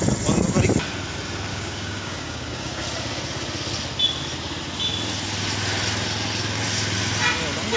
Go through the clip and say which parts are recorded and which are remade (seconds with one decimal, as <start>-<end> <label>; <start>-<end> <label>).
0.0-1.5 recorded; 1.5-2.8 remade; 2.8-7.8 recorded